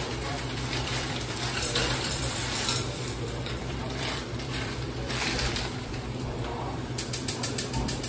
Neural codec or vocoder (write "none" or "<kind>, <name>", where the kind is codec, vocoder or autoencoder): vocoder, BigVGAN v2